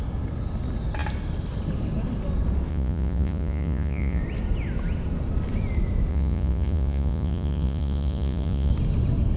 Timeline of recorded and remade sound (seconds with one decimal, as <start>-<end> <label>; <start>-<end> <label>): 0.0-2.7 recorded; 2.7-4.2 remade; 4.2-6.1 recorded; 6.1-8.7 remade; 8.7-9.4 recorded